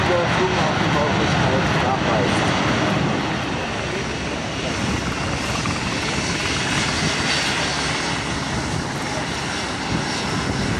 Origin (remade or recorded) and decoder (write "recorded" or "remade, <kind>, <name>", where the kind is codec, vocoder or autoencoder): recorded